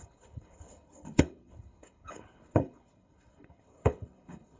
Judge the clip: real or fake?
fake